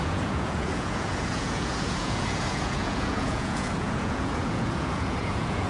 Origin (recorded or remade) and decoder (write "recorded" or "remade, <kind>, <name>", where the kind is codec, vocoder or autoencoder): remade, vocoder, Vocos